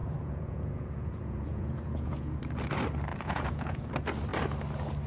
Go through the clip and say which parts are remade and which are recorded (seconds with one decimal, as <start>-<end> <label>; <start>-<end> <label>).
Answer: 0.0-2.4 remade; 2.4-3.1 recorded; 3.1-3.9 remade; 3.9-5.1 recorded